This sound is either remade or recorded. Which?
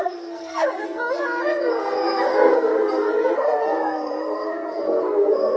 remade